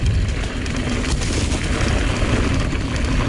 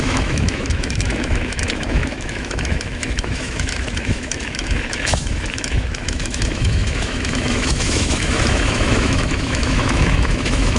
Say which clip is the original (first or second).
first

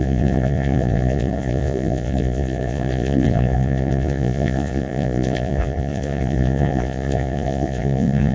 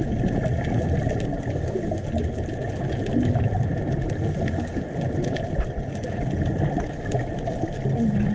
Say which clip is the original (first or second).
second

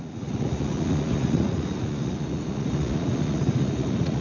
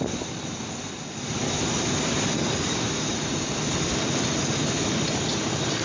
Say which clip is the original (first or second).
second